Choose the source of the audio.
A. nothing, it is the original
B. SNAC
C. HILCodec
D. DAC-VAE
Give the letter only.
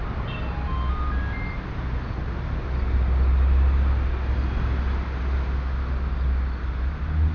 A